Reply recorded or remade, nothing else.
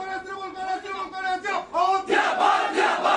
recorded